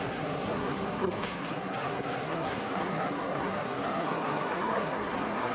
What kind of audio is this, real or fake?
fake